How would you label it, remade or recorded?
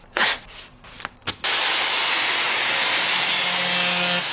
recorded